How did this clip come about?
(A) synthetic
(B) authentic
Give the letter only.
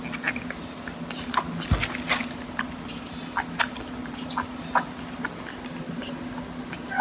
B